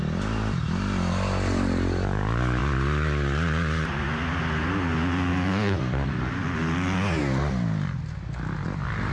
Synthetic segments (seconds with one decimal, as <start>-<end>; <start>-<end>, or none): 5.3-5.8